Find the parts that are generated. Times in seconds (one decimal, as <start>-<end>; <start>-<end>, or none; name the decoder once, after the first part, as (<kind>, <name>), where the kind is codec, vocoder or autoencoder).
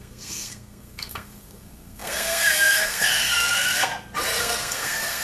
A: 0.0-3.9 (codec, SNAC); 4.4-5.2